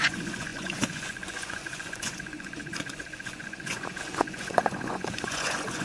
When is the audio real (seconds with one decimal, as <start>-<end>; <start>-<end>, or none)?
none